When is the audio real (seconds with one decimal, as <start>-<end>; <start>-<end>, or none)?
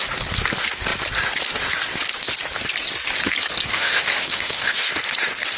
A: 0.0-3.7; 4.9-5.6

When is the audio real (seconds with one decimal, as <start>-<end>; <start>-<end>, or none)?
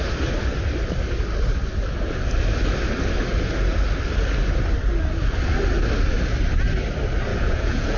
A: 0.0-7.3